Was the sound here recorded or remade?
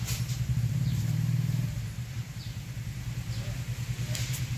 remade